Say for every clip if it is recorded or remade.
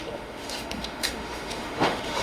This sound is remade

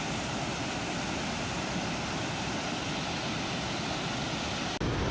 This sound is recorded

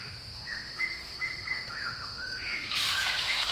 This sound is remade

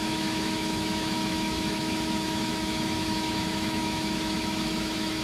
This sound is remade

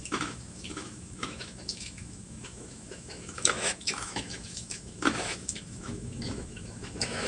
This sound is remade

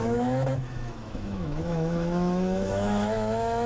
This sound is remade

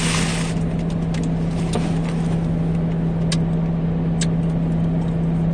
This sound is recorded